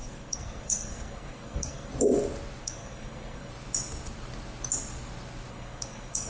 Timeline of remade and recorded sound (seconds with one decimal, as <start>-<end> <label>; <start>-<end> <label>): 0.0-1.9 remade; 1.9-2.6 recorded; 2.6-3.5 remade; 3.5-5.5 recorded; 5.5-6.3 remade

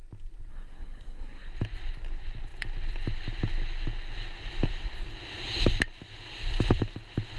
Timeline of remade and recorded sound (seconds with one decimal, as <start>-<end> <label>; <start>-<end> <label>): 0.0-0.5 recorded; 0.5-1.5 remade; 1.5-7.4 recorded

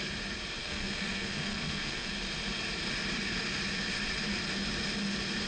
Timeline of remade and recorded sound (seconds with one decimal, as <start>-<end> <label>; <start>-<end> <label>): 0.0-0.6 recorded; 0.6-2.1 remade; 2.1-5.5 recorded

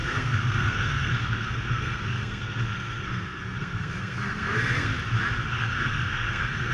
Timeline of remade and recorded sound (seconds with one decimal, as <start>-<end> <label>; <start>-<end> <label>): 0.0-4.9 remade; 4.9-5.5 recorded; 5.5-6.7 remade

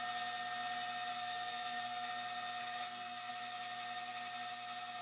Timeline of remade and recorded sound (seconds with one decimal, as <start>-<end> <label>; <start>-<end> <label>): 0.0-1.1 recorded; 1.1-2.1 remade; 2.1-2.6 recorded; 2.6-3.3 remade; 3.3-5.0 recorded

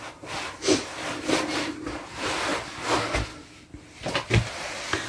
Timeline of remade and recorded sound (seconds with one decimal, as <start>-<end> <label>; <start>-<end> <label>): 0.0-5.1 recorded